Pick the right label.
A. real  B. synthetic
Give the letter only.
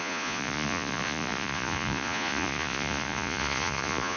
B